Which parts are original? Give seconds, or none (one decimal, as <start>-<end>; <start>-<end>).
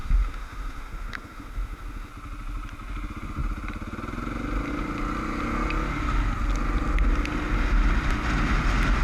2.1-9.0